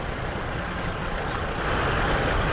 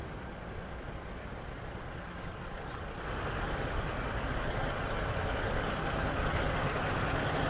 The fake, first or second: first